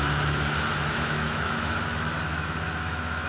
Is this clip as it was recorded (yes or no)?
no